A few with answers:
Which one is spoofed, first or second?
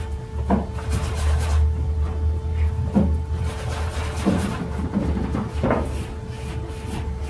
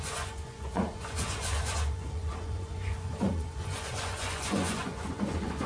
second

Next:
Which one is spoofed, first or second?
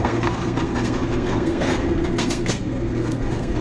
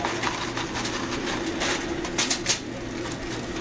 first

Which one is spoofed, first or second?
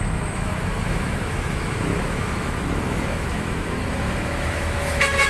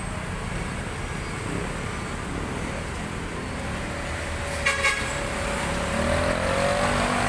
first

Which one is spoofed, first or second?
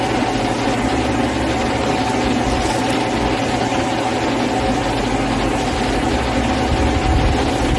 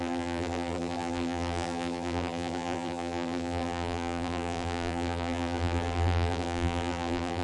second